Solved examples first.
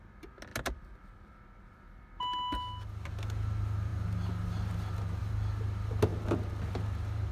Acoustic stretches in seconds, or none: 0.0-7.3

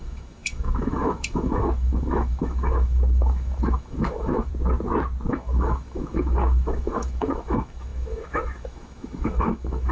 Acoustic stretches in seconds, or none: 4.5-5.3